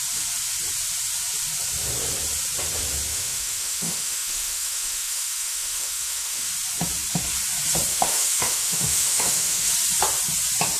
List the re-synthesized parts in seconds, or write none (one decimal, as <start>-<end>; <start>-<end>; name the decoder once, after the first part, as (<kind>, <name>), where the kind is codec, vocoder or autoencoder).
3.1-6.5 (autoencoder, DAC-VAE); 7.9-9.7